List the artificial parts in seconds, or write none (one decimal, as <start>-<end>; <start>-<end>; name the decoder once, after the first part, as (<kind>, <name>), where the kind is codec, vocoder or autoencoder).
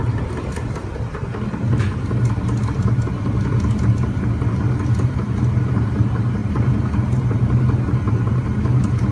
none